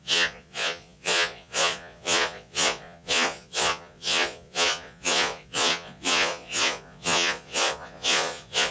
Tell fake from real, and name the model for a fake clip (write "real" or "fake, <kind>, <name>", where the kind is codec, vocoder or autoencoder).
fake, vocoder, Vocos